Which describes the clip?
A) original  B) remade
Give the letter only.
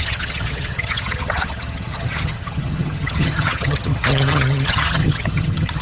B